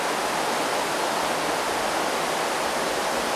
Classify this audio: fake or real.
real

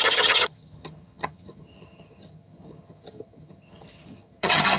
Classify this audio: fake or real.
fake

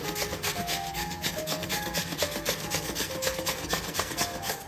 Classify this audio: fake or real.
fake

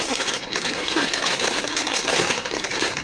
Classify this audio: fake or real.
fake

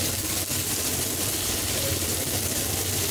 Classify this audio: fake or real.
real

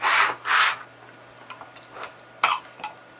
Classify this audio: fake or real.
real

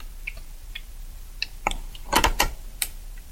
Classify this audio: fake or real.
fake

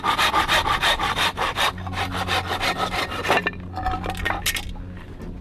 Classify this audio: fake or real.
real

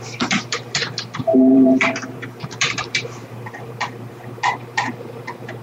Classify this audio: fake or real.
fake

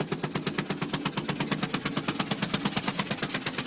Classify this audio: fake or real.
real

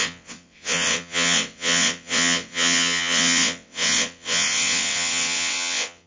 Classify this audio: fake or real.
fake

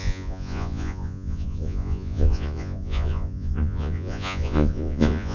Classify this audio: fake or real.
fake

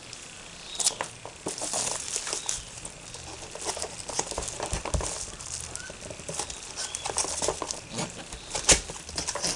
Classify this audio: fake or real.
real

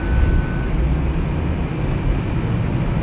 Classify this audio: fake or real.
real